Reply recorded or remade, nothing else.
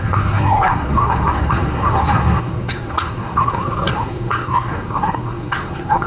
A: remade